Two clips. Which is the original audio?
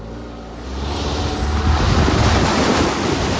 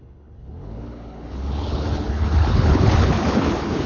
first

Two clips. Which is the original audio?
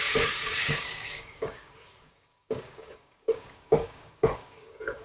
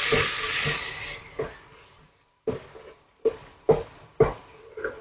second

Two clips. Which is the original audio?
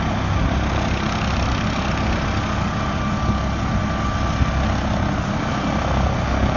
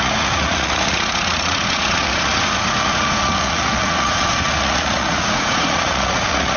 first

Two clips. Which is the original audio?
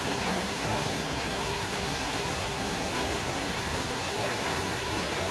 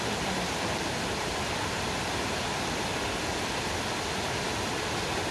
second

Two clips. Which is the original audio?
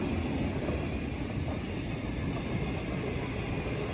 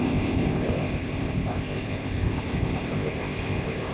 first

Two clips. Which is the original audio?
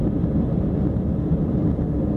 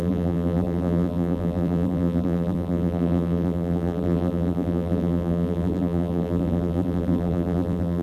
first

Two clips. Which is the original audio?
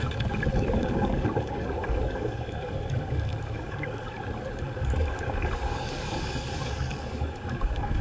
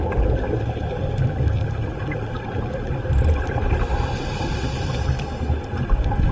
second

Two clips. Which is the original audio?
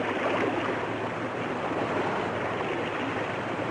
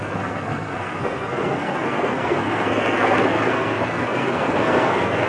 first